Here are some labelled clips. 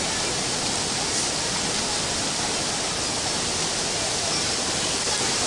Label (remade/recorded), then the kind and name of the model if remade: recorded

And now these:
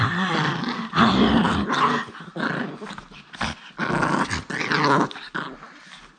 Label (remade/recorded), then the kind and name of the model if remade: recorded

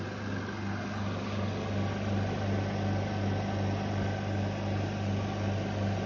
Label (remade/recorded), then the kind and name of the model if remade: recorded